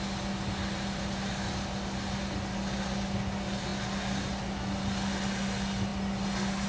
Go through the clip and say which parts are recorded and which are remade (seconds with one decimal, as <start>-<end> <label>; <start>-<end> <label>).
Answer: 0.0-6.7 recorded